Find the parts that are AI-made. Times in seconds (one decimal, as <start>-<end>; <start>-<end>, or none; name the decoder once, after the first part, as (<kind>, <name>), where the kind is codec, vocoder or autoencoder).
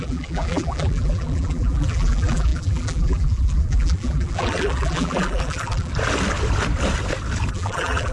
0.0-5.9 (vocoder, BigVGAN v2); 7.5-8.1